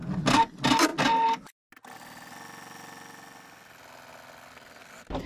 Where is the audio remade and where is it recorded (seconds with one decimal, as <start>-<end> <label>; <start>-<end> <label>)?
0.0-5.3 recorded